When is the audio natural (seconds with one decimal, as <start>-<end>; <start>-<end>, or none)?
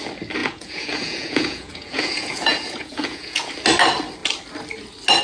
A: 0.0-0.4; 3.5-5.2